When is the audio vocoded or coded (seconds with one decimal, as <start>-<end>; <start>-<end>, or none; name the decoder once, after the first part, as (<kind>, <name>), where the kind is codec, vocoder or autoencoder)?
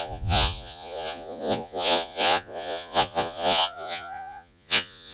0.0-5.1 (vocoder, Vocos)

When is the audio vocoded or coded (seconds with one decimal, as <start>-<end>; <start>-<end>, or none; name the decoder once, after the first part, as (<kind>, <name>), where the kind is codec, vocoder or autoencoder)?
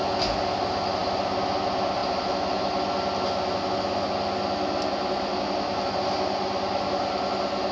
none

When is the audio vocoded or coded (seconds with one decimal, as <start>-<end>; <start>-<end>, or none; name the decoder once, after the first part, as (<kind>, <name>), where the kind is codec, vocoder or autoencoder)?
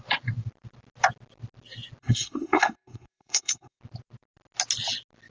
2.0-3.8 (codec, SNAC)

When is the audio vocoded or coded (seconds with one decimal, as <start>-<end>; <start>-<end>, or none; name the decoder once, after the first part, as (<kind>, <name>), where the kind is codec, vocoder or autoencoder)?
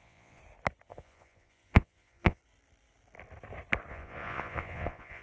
0.0-0.4 (vocoder, Vocos); 0.9-2.4; 3.9-5.2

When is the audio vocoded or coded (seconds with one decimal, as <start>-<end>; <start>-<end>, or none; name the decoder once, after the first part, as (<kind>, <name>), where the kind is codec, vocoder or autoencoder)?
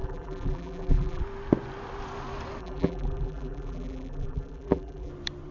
0.0-1.2 (vocoder, BigVGAN v2); 2.6-5.1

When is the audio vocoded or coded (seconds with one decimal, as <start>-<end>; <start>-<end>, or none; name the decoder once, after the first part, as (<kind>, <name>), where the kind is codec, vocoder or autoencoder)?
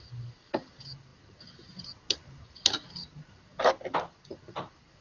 none